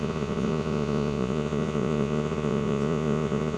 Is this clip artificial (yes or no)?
yes